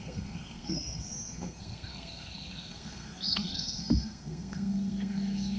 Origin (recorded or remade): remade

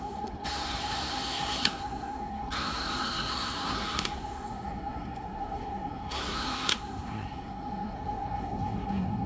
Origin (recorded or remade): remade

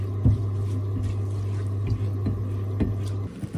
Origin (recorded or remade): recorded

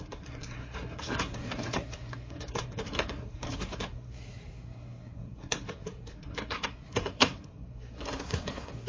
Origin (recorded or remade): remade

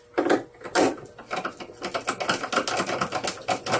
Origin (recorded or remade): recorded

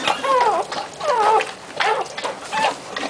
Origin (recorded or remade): recorded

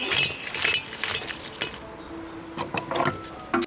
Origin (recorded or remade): recorded